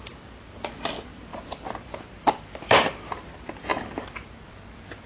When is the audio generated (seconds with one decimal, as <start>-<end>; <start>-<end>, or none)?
1.3-3.1; 3.7-4.3